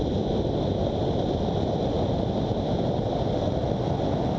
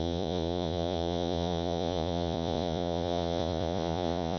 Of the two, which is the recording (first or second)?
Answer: first